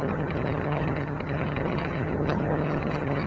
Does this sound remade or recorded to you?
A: remade